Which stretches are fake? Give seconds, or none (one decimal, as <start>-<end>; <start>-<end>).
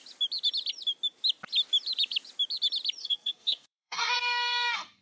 3.0-5.0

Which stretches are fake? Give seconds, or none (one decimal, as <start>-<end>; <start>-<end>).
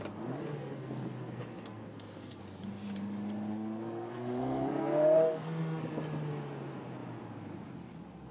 0.6-2.4; 3.5-5.9